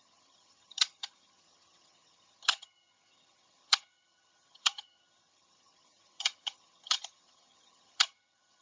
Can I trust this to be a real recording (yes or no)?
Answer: no